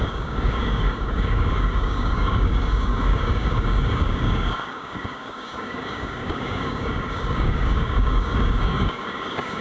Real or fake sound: fake